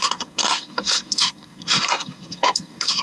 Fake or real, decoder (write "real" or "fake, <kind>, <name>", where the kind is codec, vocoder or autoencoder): fake, codec, SNAC